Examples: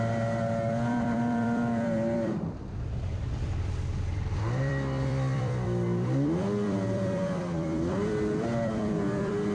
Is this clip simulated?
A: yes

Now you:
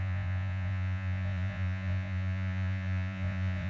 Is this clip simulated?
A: yes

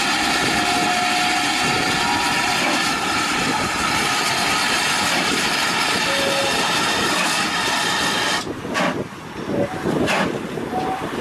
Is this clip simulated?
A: no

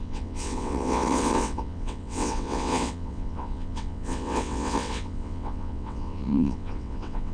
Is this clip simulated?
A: yes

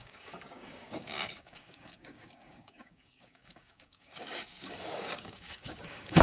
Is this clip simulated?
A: yes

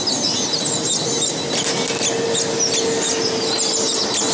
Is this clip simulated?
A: no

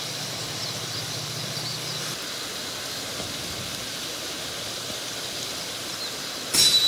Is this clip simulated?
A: no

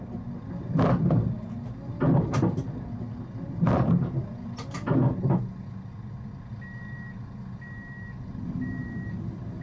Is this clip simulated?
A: no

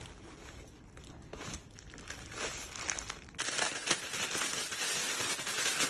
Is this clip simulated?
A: no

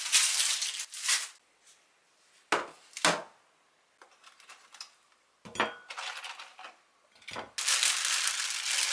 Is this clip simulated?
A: no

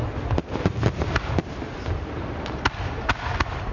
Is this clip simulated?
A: no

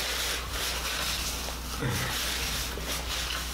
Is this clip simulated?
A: no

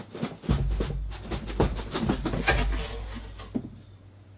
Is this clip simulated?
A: no